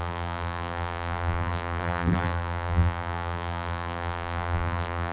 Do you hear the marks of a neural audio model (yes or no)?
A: yes